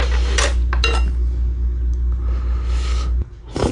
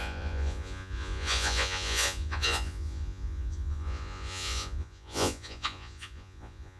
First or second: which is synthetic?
second